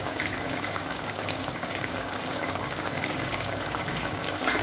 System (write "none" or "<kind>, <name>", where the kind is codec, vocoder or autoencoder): codec, DAC